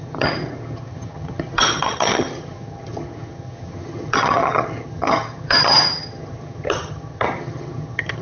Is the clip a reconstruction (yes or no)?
yes